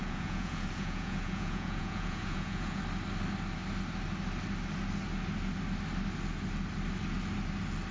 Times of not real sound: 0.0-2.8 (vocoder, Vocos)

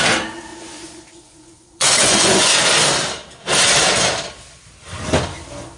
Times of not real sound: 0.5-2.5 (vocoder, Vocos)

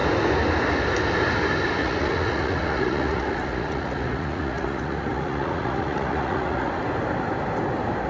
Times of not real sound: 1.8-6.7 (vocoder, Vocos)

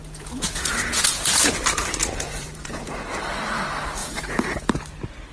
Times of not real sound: 0.0-1.5 (vocoder, Vocos); 2.0-3.2; 4.0-4.8